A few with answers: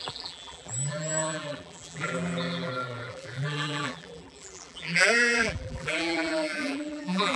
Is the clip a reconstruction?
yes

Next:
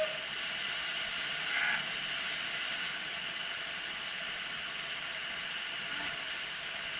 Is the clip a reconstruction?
no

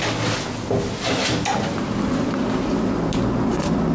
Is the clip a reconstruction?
no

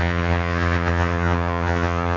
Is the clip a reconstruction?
yes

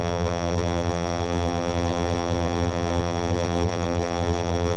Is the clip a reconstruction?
yes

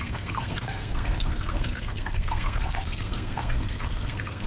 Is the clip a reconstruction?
yes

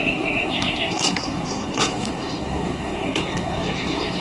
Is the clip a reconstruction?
yes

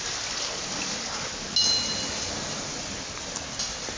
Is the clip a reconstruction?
no